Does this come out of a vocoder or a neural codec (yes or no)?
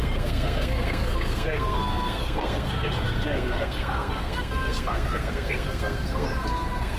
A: yes